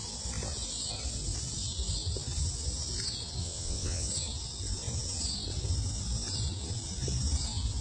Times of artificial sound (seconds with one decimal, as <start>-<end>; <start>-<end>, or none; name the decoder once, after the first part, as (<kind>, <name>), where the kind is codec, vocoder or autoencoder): 3.4-4.1 (vocoder, WaveNeXt)

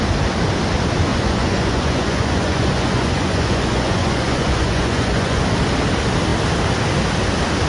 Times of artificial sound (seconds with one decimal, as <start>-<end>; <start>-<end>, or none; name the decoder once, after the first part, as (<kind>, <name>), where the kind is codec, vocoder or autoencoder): 1.1-5.4 (vocoder, Vocos)